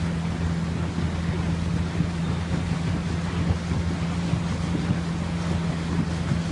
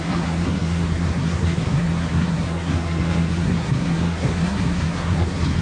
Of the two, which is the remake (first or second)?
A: second